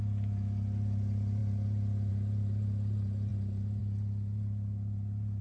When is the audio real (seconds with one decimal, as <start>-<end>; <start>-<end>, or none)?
0.0-5.4